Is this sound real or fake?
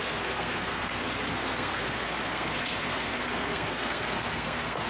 fake